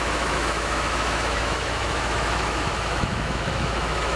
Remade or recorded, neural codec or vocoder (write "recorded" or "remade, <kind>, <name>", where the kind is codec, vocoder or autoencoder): remade, autoencoder, DAC-VAE